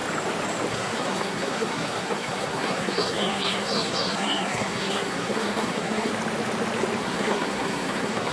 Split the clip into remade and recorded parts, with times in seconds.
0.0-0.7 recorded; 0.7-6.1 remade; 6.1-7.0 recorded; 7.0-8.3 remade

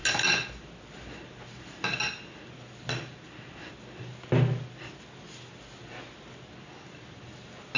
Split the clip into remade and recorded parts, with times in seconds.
0.0-7.8 recorded

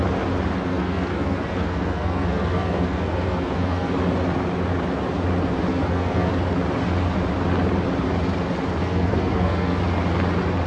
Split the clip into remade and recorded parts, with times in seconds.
0.0-0.7 recorded; 0.7-3.9 remade; 3.9-5.7 recorded; 5.7-6.3 remade; 6.3-8.8 recorded; 8.8-9.8 remade; 9.8-10.7 recorded

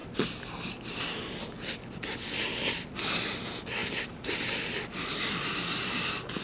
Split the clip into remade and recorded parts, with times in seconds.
0.0-6.4 recorded

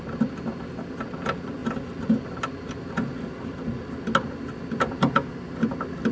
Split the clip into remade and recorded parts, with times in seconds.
0.0-6.1 recorded

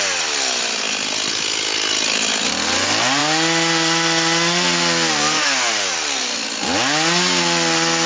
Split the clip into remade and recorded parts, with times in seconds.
0.0-8.1 recorded

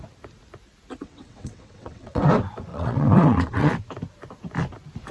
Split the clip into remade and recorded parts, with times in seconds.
0.0-1.0 recorded; 1.0-2.2 remade; 2.2-2.7 recorded; 2.7-3.7 remade; 3.7-5.1 recorded